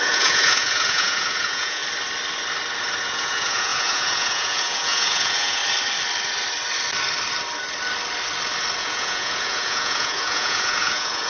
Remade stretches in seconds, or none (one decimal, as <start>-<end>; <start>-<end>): 0.0-1.8; 3.0-5.6; 8.8-11.3